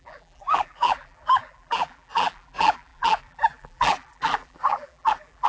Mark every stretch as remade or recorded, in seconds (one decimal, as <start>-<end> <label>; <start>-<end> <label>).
0.0-5.5 remade